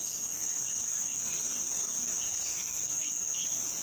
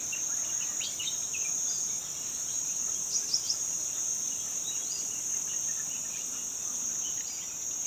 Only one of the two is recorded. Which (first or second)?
second